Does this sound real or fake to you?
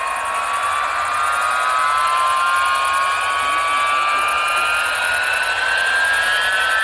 real